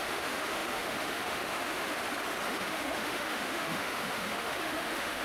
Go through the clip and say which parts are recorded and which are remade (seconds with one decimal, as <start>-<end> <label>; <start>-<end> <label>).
0.0-2.0 remade; 2.0-2.5 recorded; 2.5-5.2 remade